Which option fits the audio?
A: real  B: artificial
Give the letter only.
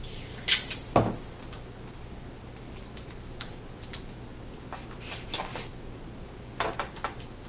A